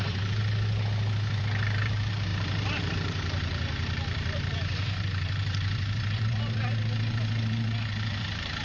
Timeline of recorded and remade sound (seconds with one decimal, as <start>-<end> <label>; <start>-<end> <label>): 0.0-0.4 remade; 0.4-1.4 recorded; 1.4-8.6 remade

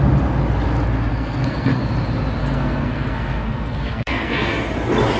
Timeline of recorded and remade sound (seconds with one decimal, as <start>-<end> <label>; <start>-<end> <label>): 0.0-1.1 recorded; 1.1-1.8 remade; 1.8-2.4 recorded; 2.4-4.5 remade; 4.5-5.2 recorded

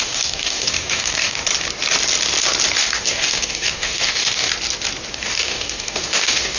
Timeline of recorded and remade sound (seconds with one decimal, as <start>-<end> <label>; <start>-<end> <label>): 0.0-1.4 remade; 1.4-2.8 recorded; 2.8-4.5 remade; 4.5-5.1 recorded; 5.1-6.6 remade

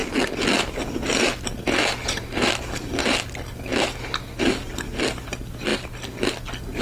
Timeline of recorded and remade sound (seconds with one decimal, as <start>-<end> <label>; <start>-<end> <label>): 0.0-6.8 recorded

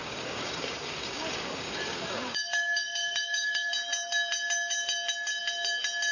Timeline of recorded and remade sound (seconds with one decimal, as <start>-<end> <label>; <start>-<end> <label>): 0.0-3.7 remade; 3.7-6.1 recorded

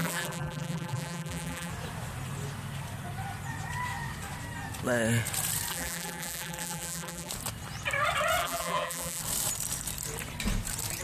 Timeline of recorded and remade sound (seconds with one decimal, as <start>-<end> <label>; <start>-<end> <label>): 0.0-1.7 remade; 1.7-5.7 recorded; 5.7-7.3 remade; 7.3-8.4 recorded; 8.4-9.2 remade; 9.2-11.0 recorded

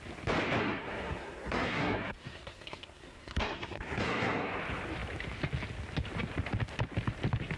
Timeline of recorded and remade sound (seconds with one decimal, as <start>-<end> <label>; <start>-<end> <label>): 0.0-0.6 recorded; 0.6-4.6 remade; 4.6-7.6 recorded